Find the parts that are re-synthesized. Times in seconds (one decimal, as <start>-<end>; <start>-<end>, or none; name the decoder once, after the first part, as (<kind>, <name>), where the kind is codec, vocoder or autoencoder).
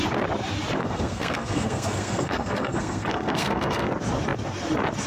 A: 0.8-3.9 (codec, SNAC)